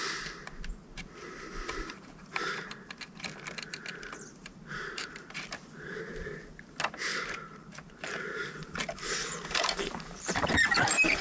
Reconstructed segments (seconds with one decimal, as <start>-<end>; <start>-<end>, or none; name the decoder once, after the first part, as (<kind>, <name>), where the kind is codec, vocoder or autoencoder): 4.4-5.5 (vocoder, BigVGAN v2); 7.1-11.2

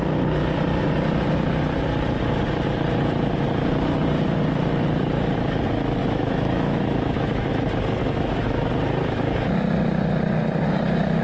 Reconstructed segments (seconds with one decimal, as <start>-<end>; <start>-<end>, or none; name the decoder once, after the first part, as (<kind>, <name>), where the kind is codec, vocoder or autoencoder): 6.0-7.5 (autoencoder, DAC-VAE); 8.0-8.7

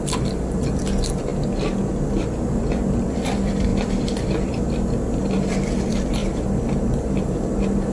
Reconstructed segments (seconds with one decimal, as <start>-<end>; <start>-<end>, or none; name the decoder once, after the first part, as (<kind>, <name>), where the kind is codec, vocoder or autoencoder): 0.0-1.3 (vocoder, BigVGAN v2); 2.1-7.9

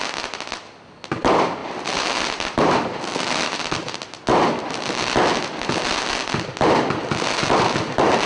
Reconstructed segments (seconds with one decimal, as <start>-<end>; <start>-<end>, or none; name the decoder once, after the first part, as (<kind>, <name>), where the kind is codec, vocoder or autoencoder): none

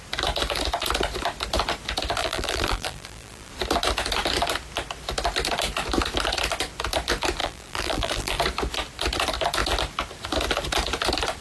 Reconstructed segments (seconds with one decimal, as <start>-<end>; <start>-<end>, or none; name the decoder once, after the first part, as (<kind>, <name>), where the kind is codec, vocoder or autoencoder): 2.2-3.5 (vocoder, BigVGAN v2); 7.4-8.4